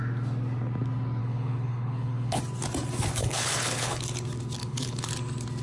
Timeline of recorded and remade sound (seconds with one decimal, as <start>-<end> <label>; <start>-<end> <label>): 0.0-1.2 recorded; 1.2-2.4 remade; 2.4-3.2 recorded; 3.2-4.0 remade; 4.0-4.6 recorded; 4.6-5.1 remade; 5.1-5.6 recorded